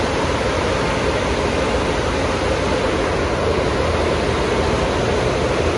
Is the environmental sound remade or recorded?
recorded